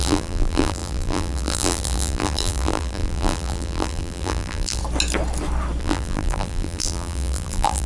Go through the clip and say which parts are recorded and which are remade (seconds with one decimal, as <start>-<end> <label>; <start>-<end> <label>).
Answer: 0.0-4.8 remade; 4.8-5.8 recorded; 5.8-7.9 remade